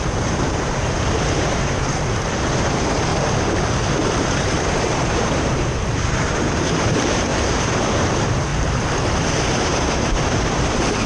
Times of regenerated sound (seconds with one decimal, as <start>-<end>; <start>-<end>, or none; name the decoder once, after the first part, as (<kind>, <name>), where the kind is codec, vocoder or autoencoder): 0.0-3.1 (vocoder, BigVGAN v2); 4.2-8.5; 9.6-11.1